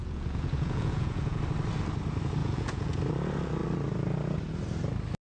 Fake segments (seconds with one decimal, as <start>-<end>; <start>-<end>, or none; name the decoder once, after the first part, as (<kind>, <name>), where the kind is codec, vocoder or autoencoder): 0.0-1.4 (vocoder, Vocos); 2.4-3.0